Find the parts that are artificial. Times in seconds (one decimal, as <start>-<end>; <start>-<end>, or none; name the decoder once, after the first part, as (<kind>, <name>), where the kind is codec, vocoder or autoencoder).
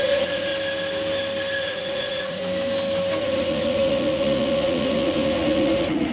0.0-0.5 (vocoder, Vocos); 1.6-2.4; 3.2-6.1